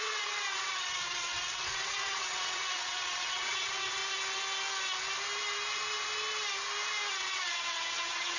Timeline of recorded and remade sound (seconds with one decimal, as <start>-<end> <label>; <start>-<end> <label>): 0.0-4.0 remade; 4.0-7.1 recorded; 7.1-8.4 remade